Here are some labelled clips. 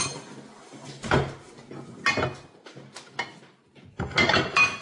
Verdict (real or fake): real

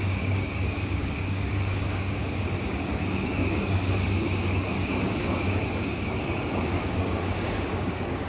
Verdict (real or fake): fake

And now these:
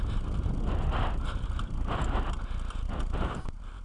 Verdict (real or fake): real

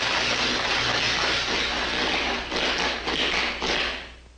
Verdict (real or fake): real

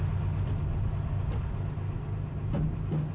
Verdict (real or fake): real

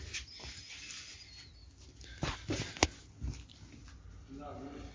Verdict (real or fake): real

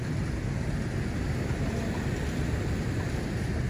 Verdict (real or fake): real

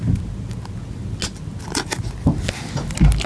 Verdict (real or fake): real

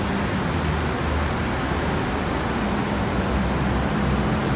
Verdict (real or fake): real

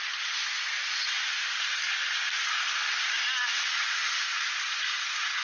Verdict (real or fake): real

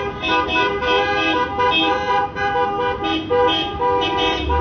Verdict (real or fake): real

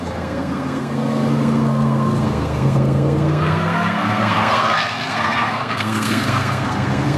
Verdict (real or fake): fake